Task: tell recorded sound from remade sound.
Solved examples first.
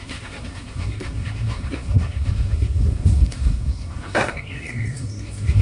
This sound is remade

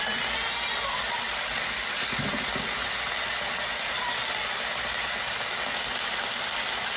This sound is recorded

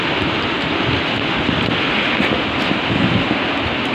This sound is recorded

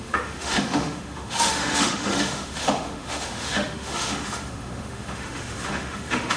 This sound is remade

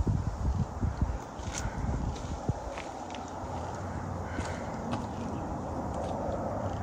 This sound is remade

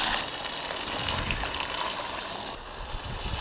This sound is recorded